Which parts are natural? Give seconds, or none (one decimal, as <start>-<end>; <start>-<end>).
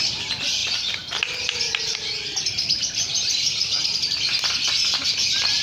0.6-1.8; 4.3-5.1